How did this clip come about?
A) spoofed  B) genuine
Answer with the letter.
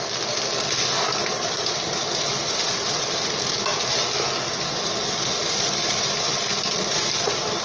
B